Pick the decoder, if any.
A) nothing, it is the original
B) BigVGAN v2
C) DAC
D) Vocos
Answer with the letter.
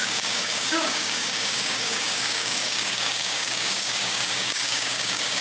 C